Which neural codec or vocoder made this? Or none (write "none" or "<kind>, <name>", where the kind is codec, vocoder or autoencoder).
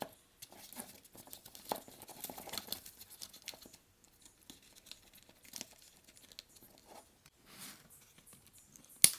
none